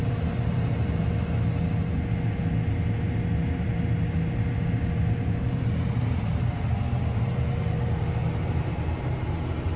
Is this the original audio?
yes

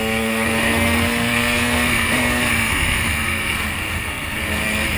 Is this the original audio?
no